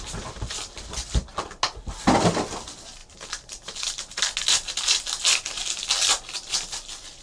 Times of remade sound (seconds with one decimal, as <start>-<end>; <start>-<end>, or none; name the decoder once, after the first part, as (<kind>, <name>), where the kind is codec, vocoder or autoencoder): none